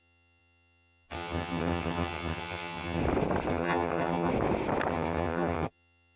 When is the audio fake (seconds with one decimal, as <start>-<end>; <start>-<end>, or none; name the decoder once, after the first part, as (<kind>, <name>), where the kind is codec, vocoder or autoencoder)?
0.0-3.0 (vocoder, HiFi-GAN); 3.5-4.3; 4.9-6.2